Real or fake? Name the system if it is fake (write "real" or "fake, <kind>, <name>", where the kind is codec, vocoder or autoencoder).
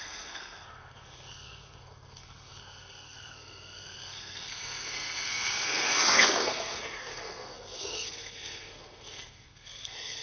fake, codec, SNAC